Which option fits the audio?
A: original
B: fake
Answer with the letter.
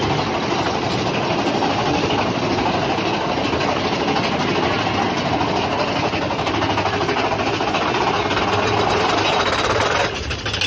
A